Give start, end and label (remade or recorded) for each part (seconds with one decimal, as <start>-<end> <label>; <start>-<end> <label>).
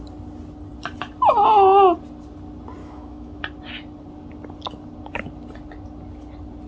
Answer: 0.0-2.8 recorded; 2.8-3.4 remade; 3.4-6.7 recorded